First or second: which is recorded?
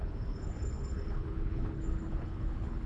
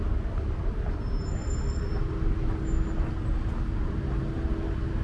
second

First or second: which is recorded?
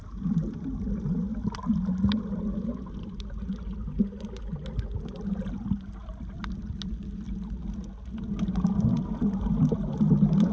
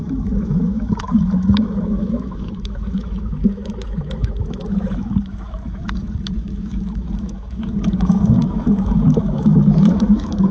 first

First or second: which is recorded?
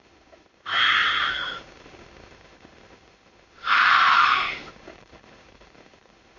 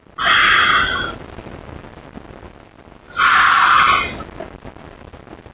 second